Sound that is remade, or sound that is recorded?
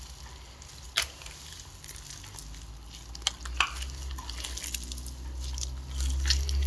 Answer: recorded